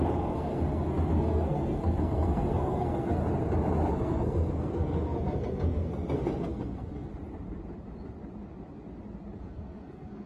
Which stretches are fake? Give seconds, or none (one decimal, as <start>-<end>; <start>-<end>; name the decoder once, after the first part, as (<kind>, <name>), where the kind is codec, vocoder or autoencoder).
0.0-3.2 (codec, SNAC); 3.9-7.1; 9.4-10.3